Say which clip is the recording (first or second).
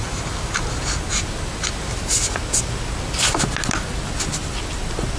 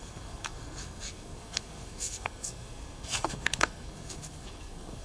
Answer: first